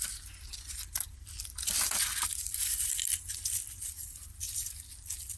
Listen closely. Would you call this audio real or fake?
real